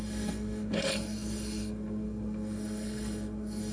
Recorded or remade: remade